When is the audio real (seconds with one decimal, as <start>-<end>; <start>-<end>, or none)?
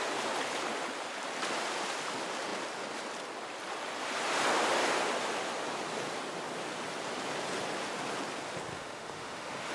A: 0.0-8.7